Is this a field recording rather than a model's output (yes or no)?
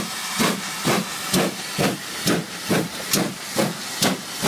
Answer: yes